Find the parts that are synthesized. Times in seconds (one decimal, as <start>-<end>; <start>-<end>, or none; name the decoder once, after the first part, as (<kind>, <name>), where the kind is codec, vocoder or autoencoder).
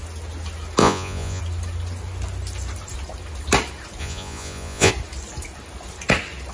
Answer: 0.8-1.4 (vocoder, Vocos); 4.0-4.9